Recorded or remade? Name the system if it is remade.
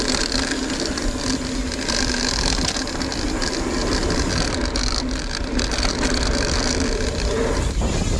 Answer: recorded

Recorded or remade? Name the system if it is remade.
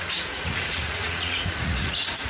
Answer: remade, vocoder, Vocos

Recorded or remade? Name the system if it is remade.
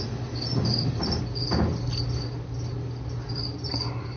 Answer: recorded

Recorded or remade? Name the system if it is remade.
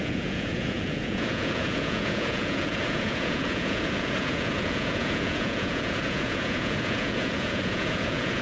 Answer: remade, vocoder, Vocos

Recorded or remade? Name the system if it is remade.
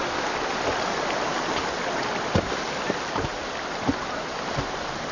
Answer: recorded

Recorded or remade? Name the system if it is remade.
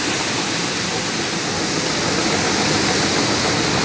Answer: recorded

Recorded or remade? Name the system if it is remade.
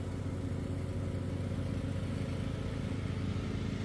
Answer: recorded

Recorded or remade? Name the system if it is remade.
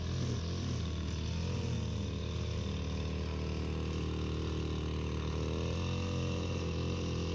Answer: recorded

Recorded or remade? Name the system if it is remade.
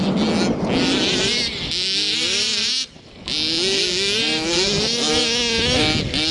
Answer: recorded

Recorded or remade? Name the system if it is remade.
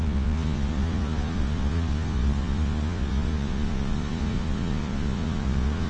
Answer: remade, vocoder, Vocos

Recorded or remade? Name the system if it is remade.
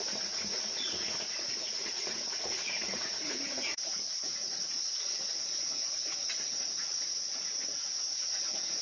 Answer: remade, vocoder, Vocos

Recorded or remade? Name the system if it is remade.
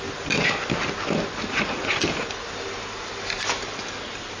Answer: recorded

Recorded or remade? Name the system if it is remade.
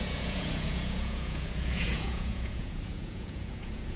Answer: remade, vocoder, Vocos